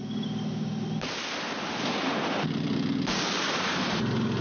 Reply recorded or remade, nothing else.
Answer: recorded